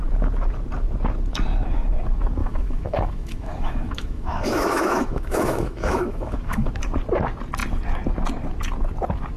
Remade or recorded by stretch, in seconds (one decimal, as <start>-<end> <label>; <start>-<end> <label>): 0.0-2.4 recorded; 2.4-6.7 remade; 6.7-9.4 recorded